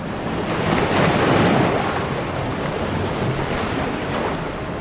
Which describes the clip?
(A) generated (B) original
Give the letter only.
B